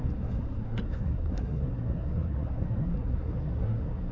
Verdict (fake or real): fake